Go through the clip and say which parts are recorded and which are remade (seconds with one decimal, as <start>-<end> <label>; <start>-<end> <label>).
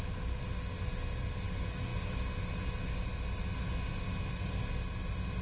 0.0-5.4 recorded